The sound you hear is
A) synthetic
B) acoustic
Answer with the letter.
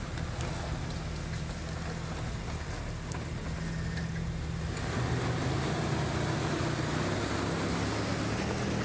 B